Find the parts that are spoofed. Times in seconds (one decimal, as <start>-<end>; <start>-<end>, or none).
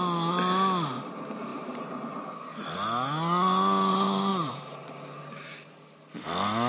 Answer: 1.5-2.3; 4.3-4.9